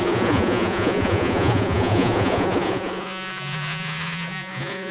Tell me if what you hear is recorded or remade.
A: remade